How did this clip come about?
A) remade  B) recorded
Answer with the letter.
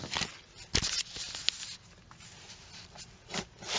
B